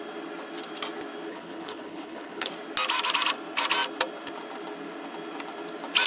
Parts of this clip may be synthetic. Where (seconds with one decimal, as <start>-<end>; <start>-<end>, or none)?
1.3-2.5